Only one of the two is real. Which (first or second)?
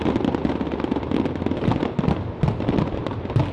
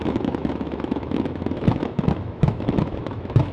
first